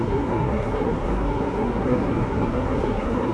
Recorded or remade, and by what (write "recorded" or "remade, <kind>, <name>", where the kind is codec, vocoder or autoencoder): remade, codec, SNAC